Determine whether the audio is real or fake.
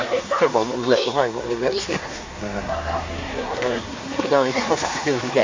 fake